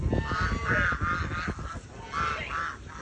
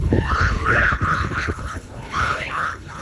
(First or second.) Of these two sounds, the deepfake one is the second